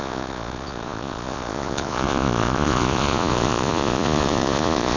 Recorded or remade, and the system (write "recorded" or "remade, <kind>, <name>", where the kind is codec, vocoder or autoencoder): remade, vocoder, Vocos